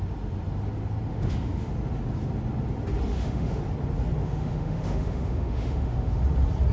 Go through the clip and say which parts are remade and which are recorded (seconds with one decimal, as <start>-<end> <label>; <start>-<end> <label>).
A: 0.0-1.1 recorded; 1.1-1.7 remade; 1.7-3.1 recorded; 3.1-3.6 remade; 3.6-4.2 recorded; 4.2-6.2 remade; 6.2-6.7 recorded